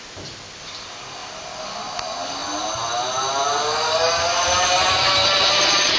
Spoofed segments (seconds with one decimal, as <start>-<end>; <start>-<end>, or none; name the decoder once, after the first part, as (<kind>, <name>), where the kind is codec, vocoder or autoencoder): none